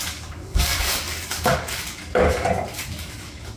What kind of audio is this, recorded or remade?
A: remade